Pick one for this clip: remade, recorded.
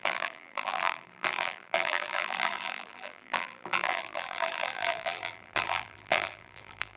remade